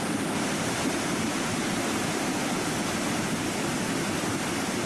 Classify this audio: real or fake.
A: real